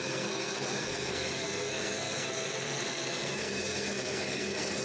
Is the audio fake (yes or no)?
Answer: yes